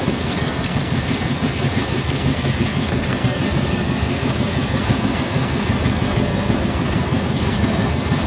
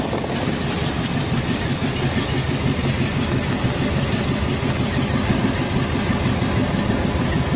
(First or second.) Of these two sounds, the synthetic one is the first